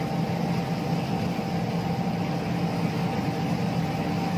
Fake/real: real